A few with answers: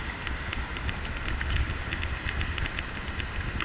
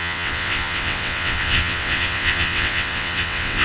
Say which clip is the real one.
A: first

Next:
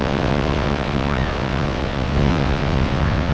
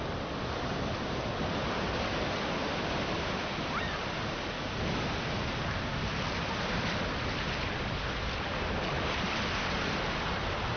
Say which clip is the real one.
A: second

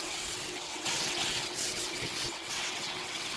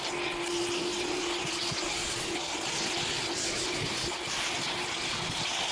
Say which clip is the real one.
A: second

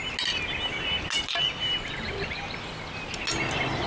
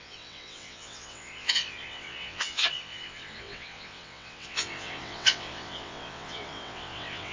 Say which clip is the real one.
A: first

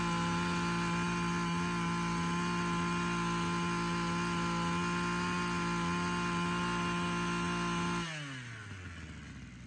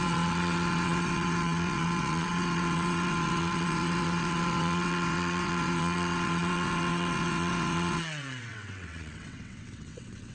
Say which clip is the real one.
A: first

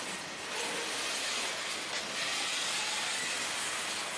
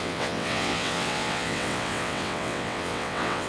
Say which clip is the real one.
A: first